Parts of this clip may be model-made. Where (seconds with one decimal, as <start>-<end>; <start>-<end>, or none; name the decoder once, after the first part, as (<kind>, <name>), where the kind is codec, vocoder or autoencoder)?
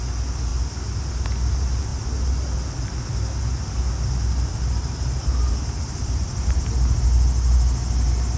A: none